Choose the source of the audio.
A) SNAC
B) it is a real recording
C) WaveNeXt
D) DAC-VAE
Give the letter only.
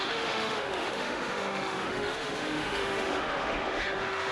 D